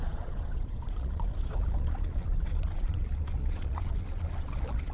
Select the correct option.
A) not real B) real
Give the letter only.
A